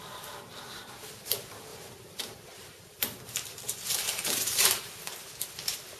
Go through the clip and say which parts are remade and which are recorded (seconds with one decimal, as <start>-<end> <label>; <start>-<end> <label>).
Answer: 0.0-1.7 recorded; 1.7-5.3 remade; 5.3-6.0 recorded